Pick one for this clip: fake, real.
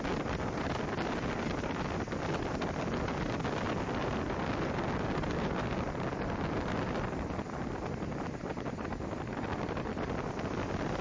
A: real